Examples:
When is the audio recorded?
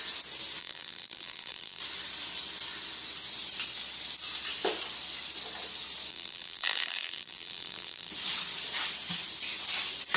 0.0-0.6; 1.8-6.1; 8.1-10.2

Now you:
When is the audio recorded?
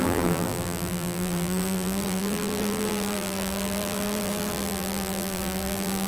none